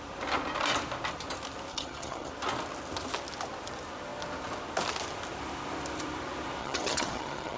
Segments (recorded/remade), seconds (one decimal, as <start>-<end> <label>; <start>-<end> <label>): 0.0-1.7 recorded; 1.7-2.3 remade; 2.3-6.6 recorded; 6.6-7.6 remade